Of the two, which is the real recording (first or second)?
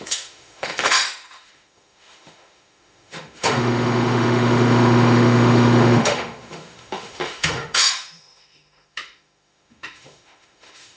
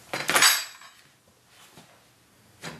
second